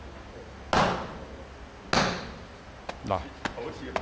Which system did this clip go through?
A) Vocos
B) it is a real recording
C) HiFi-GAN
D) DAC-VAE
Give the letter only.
B